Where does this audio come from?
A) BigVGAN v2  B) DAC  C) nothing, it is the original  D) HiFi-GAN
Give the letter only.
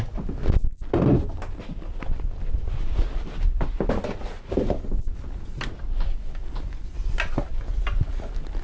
C